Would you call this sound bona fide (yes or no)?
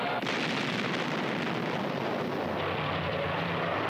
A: yes